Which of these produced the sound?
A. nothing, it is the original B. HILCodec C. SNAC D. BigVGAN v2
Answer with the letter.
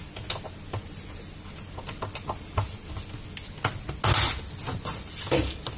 A